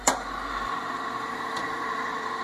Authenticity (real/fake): fake